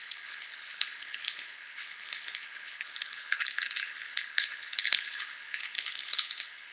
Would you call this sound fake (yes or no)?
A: yes